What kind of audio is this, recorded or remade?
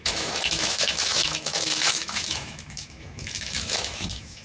remade